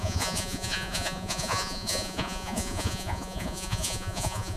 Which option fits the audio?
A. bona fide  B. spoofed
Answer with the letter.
B